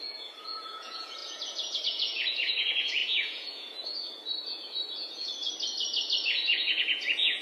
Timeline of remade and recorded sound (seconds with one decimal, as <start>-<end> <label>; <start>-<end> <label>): 0.0-5.3 remade; 5.3-6.2 recorded; 6.2-7.4 remade